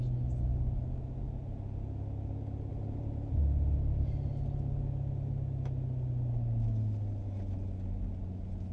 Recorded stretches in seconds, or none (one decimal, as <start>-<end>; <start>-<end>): 0.0-2.7; 3.4-8.7